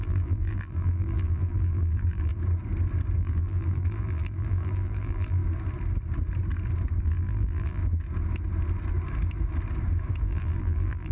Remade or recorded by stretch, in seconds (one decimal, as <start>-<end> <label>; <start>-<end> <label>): 0.0-2.3 remade; 2.3-3.2 recorded; 3.2-5.4 remade; 5.4-7.0 recorded; 7.0-7.8 remade; 7.8-10.2 recorded; 10.2-11.1 remade